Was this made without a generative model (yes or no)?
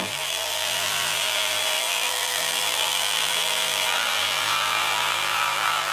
no